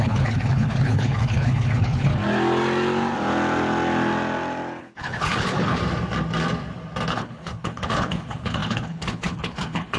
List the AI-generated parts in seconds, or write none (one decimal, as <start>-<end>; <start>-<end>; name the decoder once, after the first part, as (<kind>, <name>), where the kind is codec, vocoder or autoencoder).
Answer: 0.0-2.1 (codec, HILCodec); 4.8-5.8; 7.1-10.0